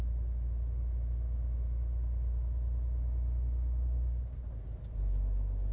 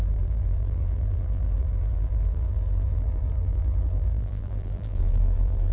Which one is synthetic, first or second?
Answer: second